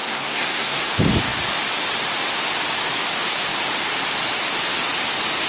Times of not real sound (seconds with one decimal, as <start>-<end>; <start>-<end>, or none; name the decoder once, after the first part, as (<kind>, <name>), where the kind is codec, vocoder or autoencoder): 0.0-0.9 (codec, SNAC)